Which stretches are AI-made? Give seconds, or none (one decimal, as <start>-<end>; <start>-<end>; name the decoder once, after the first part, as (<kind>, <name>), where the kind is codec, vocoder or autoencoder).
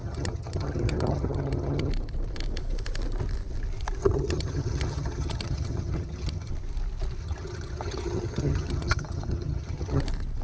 0.0-1.9 (vocoder, HiFi-GAN); 4.0-6.5; 7.2-10.0